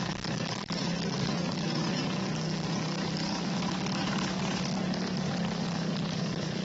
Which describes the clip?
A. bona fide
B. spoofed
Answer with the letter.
B